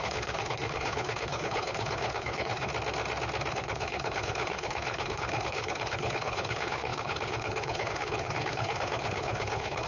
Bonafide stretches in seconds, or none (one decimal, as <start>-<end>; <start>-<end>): 2.7-3.5